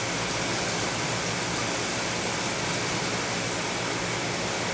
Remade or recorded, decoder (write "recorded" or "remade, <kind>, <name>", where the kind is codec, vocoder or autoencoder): recorded